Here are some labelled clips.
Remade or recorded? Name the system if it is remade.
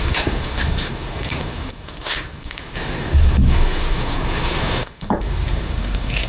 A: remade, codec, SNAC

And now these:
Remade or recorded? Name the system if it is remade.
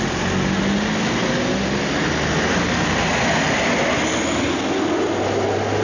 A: recorded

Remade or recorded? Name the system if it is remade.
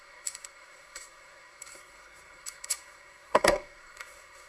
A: remade, codec, SNAC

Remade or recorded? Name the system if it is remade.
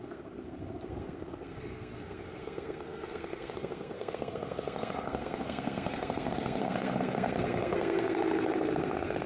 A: remade, codec, SNAC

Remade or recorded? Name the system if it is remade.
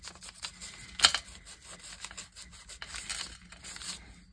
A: recorded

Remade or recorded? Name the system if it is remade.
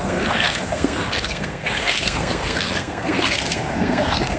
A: remade, codec, SNAC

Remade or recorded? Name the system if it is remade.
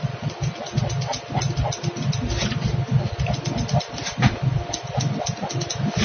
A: recorded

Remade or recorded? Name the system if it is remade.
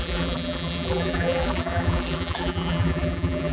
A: remade, vocoder, BigVGAN v2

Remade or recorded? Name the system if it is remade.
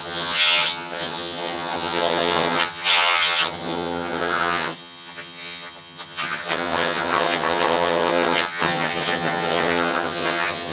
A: remade, vocoder, HiFi-GAN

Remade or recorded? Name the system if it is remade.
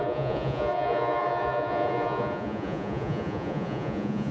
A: remade, vocoder, Vocos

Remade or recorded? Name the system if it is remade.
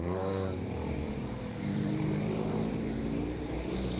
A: remade, vocoder, BigVGAN v2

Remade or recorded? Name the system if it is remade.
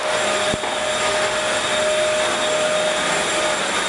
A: recorded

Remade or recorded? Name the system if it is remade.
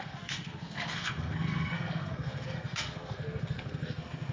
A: remade, codec, SNAC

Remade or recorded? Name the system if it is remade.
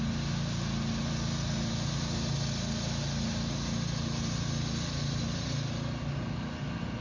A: recorded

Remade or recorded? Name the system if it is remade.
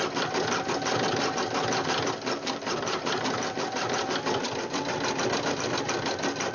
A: recorded